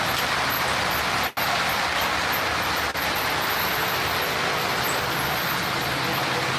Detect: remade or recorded recorded